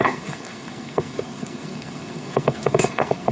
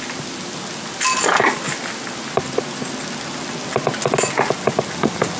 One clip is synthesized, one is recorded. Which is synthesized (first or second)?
first